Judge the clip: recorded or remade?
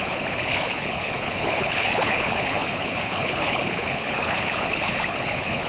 remade